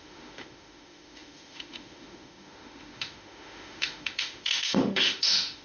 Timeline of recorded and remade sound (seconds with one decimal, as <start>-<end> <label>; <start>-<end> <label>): 0.0-5.6 remade